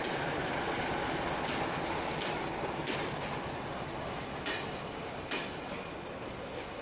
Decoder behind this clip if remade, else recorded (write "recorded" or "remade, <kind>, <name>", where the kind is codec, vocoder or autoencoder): recorded